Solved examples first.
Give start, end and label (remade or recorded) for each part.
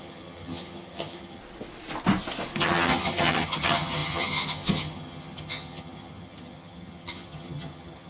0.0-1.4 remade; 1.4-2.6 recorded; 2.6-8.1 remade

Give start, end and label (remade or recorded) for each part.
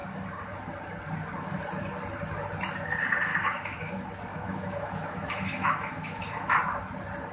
0.0-3.3 recorded; 3.3-3.9 remade; 3.9-4.3 recorded; 4.3-6.6 remade; 6.6-7.3 recorded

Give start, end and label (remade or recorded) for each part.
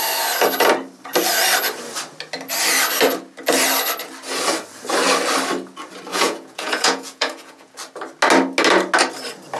0.0-6.1 recorded; 6.1-7.7 remade; 7.7-9.6 recorded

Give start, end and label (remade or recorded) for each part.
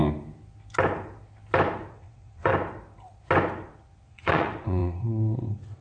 0.0-1.9 recorded; 1.9-2.5 remade; 2.5-4.1 recorded; 4.1-5.8 remade